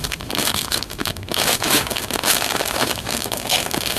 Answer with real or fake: fake